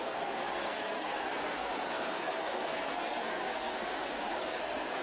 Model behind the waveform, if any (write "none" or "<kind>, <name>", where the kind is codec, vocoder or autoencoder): codec, SNAC